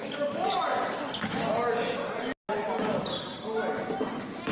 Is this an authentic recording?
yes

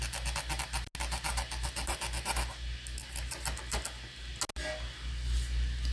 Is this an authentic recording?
yes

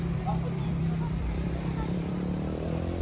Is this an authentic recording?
no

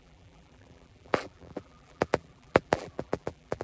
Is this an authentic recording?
no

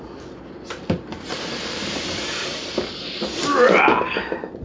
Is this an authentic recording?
no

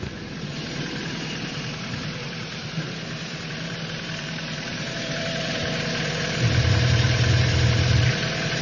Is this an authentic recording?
no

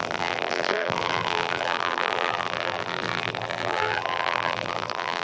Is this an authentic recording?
no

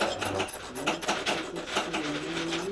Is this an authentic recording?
yes